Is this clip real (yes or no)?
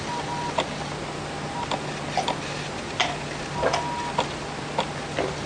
yes